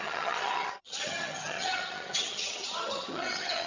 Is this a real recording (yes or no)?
no